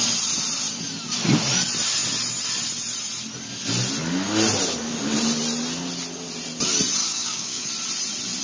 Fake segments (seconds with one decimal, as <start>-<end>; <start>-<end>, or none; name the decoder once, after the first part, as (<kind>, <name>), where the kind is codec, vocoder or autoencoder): 7.0-7.7 (codec, DAC)